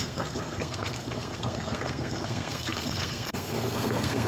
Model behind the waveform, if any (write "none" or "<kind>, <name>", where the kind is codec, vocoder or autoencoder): codec, SNAC